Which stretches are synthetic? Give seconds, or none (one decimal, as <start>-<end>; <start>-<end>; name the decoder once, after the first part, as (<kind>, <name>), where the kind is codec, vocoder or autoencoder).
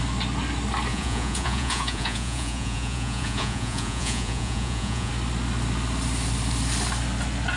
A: 0.9-5.1 (vocoder, Vocos)